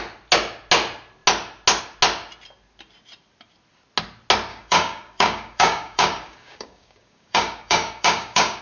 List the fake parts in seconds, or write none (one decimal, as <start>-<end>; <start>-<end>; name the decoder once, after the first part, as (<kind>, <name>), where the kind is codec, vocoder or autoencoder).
4.5-8.6 (codec, DAC)